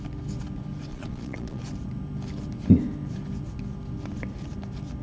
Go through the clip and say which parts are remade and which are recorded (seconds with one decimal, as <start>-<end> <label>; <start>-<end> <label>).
0.0-0.9 recorded; 0.9-1.6 remade; 1.6-5.0 recorded